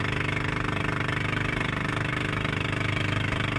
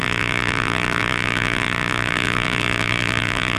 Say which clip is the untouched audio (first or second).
first